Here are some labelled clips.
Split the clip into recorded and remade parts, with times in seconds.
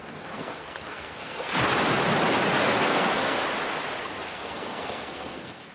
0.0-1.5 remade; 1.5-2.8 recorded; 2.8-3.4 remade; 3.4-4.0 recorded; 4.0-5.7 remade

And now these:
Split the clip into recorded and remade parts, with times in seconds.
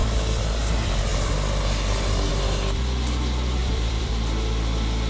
0.0-3.6 recorded; 3.6-4.1 remade; 4.1-5.1 recorded